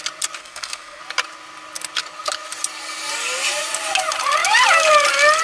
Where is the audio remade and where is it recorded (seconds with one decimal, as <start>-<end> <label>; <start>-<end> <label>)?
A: 0.0-0.4 recorded; 0.4-1.0 remade; 1.0-5.4 recorded